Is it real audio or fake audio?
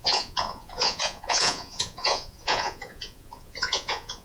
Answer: fake